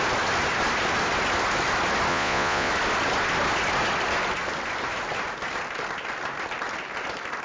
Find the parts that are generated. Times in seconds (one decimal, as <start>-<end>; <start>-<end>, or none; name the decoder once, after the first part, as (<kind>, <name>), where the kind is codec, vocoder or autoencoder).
2.1-2.7 (vocoder, Vocos)